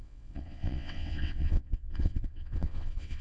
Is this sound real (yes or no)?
no